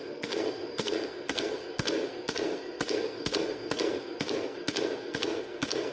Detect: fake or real fake